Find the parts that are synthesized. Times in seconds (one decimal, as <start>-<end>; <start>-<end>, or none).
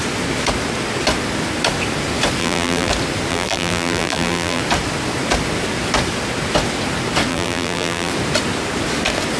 2.4-2.9; 3.3-4.6; 7.3-8.1